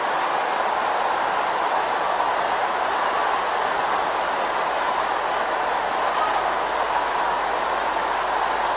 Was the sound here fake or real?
real